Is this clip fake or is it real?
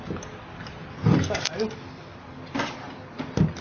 real